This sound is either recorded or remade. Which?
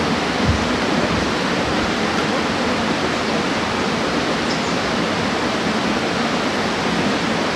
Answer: recorded